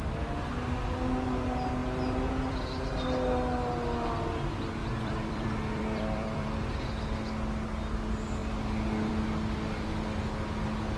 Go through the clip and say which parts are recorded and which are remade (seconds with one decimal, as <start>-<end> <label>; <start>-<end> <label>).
0.0-4.8 recorded; 4.8-6.9 remade; 6.9-11.0 recorded